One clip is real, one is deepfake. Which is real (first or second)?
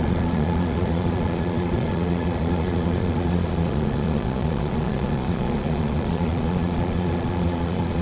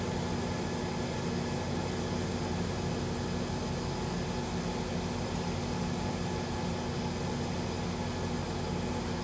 second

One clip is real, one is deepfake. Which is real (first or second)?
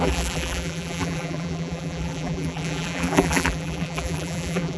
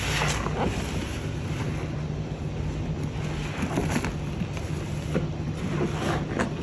second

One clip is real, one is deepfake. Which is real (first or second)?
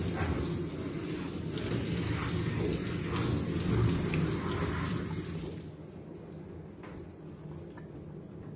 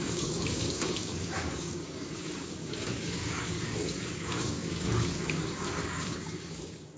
first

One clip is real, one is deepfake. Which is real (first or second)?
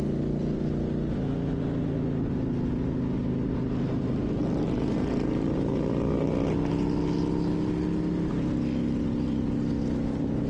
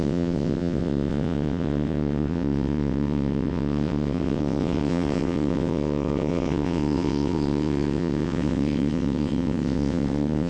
first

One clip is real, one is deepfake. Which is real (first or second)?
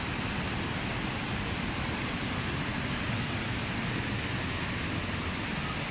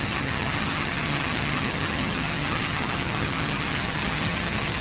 first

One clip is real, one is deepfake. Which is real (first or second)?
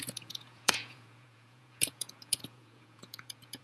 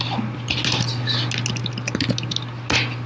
second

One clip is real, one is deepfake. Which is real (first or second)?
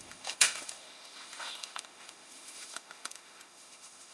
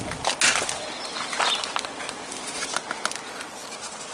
second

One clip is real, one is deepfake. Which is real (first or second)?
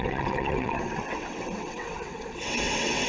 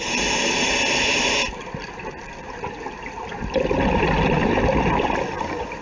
second